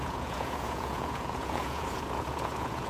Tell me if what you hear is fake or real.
fake